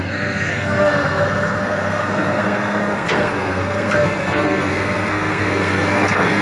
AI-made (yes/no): yes